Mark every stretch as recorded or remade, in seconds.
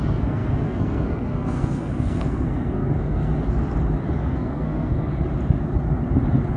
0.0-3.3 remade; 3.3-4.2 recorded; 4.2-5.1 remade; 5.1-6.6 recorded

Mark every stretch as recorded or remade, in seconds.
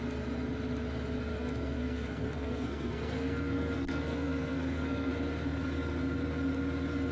0.0-1.3 recorded; 1.3-5.1 remade; 5.1-7.1 recorded